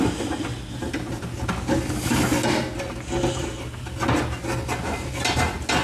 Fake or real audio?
real